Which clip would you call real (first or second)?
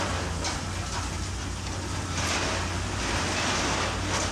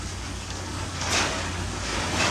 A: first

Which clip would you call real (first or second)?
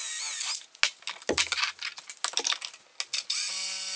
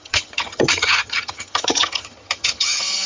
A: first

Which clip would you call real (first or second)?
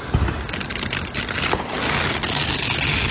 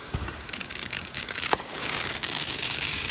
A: first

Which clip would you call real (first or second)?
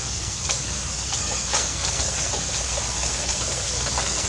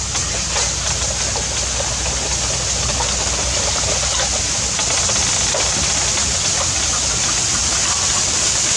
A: second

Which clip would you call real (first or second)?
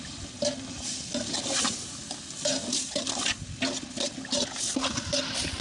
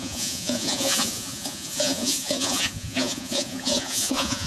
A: first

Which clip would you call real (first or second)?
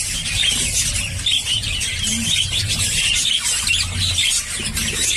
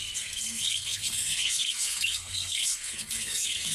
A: first